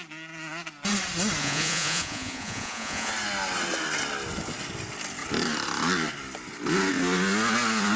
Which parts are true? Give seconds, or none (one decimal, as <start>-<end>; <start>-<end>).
0.0-1.4; 3.1-8.0